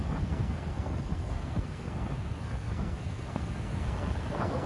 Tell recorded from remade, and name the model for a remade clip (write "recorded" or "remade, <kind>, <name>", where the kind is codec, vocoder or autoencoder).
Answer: remade, codec, SNAC